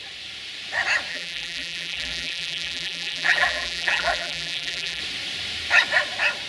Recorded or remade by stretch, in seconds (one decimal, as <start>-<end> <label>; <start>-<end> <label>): 0.0-1.1 recorded; 1.1-5.0 remade; 5.0-6.5 recorded